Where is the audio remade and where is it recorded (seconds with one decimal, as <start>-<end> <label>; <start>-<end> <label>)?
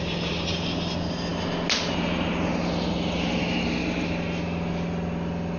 0.0-5.6 recorded